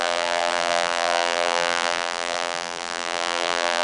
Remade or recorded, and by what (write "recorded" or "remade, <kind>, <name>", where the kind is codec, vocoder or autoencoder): remade, vocoder, BigVGAN v2